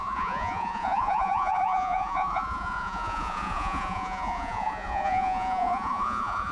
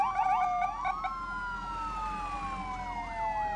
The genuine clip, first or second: second